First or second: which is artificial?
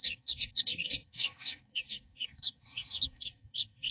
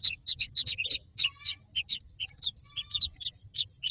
first